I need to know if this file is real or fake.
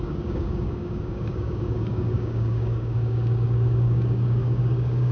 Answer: fake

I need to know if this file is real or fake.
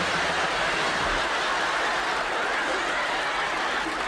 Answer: real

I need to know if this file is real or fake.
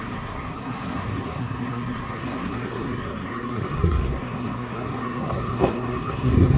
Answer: fake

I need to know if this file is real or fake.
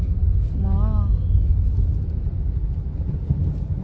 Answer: real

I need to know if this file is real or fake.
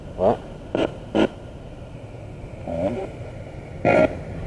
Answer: real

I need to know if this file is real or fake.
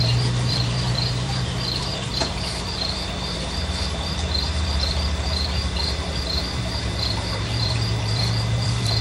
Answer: fake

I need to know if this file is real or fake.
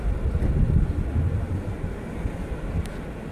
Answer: real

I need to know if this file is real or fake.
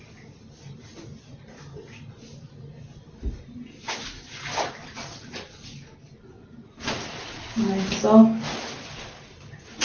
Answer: real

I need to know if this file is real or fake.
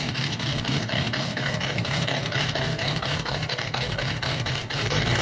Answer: fake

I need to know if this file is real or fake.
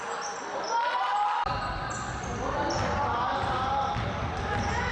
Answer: real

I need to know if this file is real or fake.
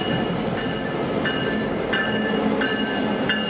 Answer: real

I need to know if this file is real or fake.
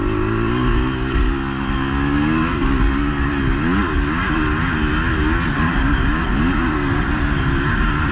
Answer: real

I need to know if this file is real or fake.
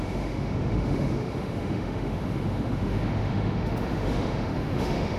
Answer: fake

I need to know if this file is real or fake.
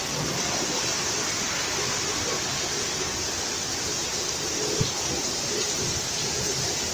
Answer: real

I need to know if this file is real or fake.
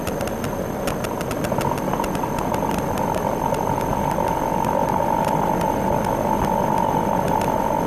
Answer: real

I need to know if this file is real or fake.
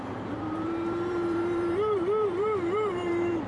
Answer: fake